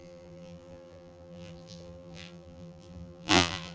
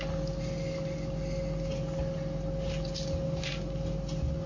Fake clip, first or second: first